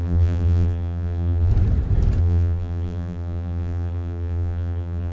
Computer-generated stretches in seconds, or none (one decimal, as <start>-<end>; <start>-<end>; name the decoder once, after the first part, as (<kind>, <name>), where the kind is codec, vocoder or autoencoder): 0.0-1.5 (vocoder, BigVGAN v2); 2.2-5.1

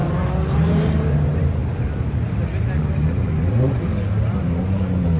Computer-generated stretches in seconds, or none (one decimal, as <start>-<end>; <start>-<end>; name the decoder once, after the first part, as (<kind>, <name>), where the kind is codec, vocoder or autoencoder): 0.5-1.6 (vocoder, BigVGAN v2); 3.4-3.9; 4.6-5.2

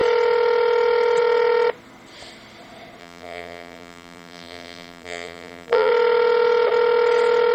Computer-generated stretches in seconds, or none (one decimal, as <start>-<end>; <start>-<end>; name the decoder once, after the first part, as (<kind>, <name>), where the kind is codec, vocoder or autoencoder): 3.0-5.9 (vocoder, BigVGAN v2)

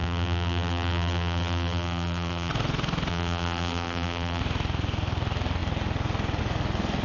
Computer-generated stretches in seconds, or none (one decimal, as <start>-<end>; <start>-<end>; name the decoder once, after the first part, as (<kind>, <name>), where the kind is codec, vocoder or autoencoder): 0.0-2.5 (vocoder, BigVGAN v2); 3.1-4.4

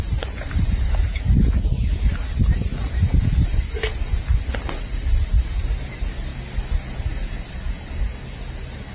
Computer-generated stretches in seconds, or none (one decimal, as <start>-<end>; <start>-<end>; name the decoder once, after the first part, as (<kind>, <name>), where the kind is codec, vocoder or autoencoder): none

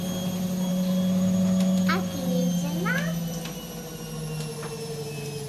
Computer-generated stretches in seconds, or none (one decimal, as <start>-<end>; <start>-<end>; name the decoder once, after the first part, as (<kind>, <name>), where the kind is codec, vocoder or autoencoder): none